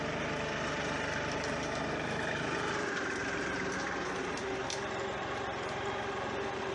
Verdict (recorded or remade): recorded